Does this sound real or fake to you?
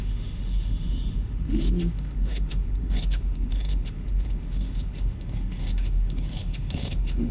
fake